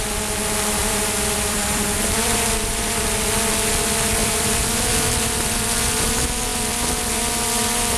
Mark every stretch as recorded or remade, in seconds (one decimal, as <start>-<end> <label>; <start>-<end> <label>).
0.0-0.8 recorded; 0.8-2.7 remade; 2.7-4.2 recorded; 4.2-4.9 remade; 4.9-8.0 recorded